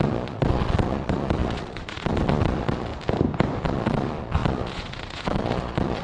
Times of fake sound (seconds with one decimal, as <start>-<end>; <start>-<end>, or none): 0.0-2.9; 3.6-6.0